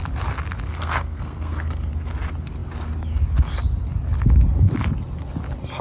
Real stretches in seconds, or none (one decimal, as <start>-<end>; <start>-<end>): 0.0-0.8; 1.9-5.8